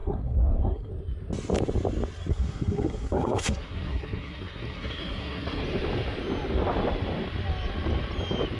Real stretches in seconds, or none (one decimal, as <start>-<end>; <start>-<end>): 0.9-2.3; 5.6-8.6

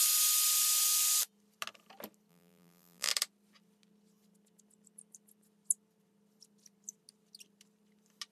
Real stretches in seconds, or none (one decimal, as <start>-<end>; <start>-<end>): 0.0-2.3; 3.1-8.3

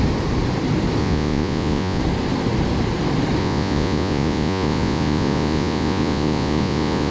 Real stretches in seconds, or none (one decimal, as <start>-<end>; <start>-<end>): 0.0-1.0; 2.0-3.4

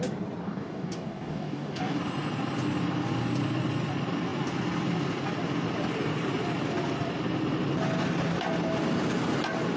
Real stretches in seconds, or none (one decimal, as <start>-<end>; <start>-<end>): 0.0-0.4; 2.0-9.8

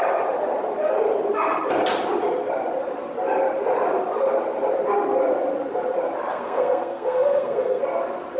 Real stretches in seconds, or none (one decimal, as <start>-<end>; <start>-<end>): 0.0-6.3; 7.8-8.4

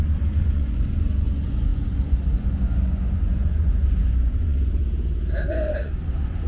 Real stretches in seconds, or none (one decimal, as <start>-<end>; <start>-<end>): 4.8-5.5